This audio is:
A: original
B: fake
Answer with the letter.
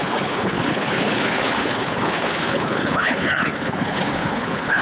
B